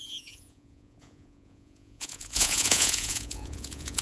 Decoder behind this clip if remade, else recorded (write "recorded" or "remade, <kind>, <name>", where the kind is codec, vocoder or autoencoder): remade, vocoder, Vocos